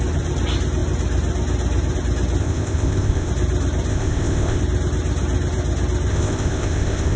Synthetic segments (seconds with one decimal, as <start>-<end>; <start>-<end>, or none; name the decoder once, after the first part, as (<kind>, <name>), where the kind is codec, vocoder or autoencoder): 2.4-3.3 (codec, ZipCodec); 3.9-4.6; 6.1-7.2

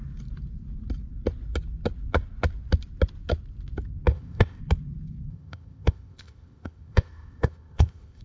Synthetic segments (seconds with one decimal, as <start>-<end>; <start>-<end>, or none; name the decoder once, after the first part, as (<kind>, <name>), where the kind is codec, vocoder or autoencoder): 4.1-4.6 (codec, ZipCodec); 5.3-8.2

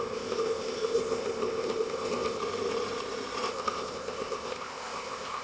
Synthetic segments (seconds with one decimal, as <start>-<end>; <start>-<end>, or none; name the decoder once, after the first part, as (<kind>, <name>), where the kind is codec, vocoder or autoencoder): 0.0-2.4 (codec, ZipCodec); 3.5-5.4

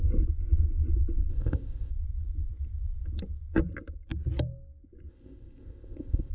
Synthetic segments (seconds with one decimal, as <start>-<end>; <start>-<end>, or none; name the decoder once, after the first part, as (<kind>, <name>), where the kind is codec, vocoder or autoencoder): 1.3-1.9 (codec, ZipCodec); 5.1-6.3

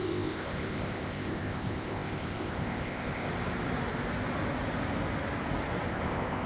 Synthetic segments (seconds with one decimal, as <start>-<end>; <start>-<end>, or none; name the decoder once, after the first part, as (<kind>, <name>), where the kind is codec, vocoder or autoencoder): 0.0-3.3 (codec, ZipCodec); 5.9-6.5

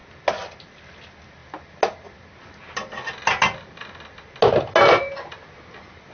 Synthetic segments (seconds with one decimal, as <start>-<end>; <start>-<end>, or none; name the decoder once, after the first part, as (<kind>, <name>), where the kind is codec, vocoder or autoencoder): none

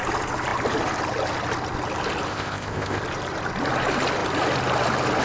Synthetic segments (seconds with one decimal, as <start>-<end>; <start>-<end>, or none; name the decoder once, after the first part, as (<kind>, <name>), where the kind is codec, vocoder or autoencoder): 2.3-3.0 (codec, ZipCodec)